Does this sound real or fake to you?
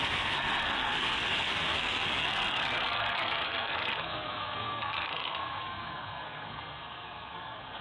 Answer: fake